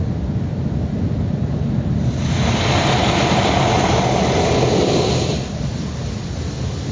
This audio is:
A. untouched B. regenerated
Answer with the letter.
A